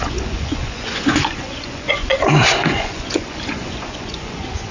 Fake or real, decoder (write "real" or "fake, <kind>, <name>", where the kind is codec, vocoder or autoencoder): fake, vocoder, Vocos